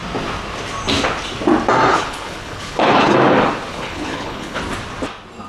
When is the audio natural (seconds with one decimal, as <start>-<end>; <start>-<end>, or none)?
0.0-1.9; 3.1-3.7; 4.6-5.5